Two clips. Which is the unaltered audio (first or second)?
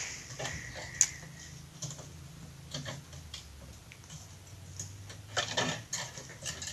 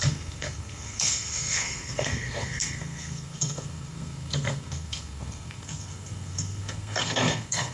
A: first